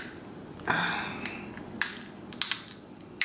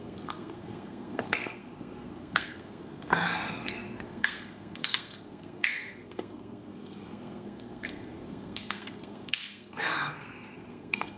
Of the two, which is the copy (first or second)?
second